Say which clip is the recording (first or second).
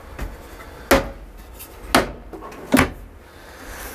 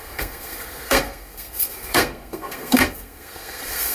first